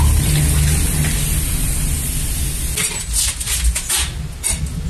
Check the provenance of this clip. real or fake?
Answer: real